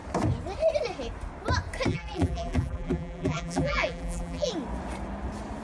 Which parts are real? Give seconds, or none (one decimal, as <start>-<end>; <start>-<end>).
0.0-1.9; 4.5-5.6